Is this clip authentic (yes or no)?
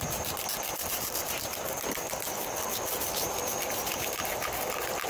yes